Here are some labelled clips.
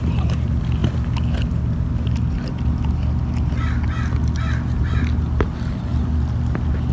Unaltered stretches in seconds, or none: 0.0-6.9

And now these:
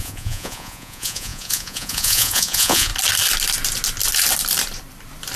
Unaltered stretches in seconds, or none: 2.9-5.4

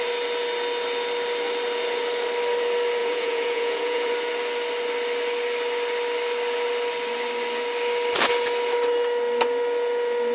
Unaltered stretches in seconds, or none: 0.0-3.0; 4.1-10.3

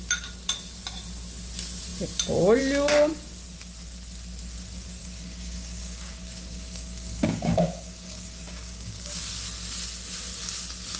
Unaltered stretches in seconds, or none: 0.0-5.0; 9.2-11.0